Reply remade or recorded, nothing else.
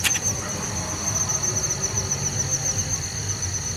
recorded